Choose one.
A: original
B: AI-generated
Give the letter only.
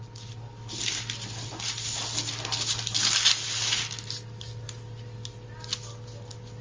A